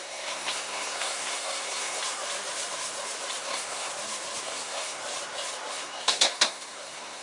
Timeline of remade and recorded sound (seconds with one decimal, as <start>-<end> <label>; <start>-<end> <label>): 0.0-2.0 remade; 2.0-3.4 recorded; 3.4-3.9 remade; 3.9-4.4 recorded; 4.4-5.0 remade; 5.0-5.7 recorded; 5.7-7.2 remade